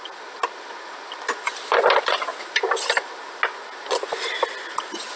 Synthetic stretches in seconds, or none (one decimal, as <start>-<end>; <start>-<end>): none